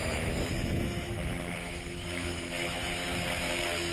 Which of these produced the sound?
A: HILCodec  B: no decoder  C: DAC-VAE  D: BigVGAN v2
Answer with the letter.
C